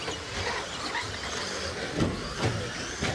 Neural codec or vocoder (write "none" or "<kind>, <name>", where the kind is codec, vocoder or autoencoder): none